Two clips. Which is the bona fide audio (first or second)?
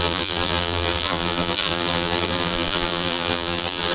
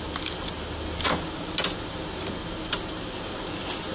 second